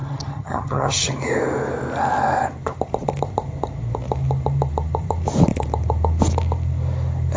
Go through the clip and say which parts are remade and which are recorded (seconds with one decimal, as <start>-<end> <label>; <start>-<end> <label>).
0.0-1.1 remade; 1.1-7.4 recorded